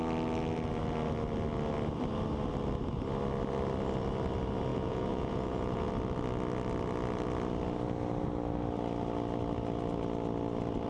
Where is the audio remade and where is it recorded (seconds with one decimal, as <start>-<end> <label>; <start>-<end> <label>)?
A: 0.0-4.7 recorded; 4.7-5.9 remade; 5.9-10.9 recorded